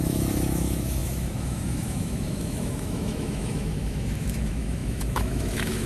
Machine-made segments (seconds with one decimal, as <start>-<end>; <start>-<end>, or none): 0.0-5.9